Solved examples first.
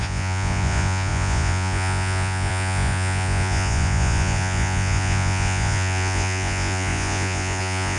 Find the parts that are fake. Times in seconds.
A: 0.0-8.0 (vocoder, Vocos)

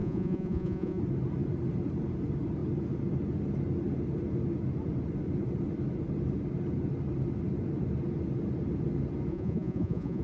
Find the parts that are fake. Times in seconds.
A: 0.0-1.0 (vocoder, Vocos); 9.3-10.2